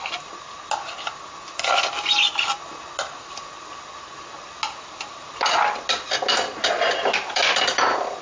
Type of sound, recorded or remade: recorded